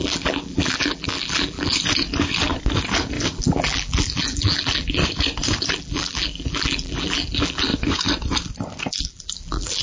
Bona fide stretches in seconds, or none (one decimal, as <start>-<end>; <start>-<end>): 1.7-3.3; 5.0-5.7; 7.7-8.9